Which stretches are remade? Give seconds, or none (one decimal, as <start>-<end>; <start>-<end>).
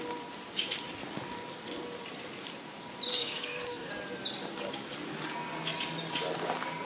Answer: 3.1-3.9